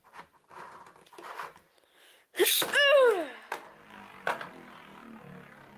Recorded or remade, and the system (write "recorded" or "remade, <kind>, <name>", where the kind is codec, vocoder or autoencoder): recorded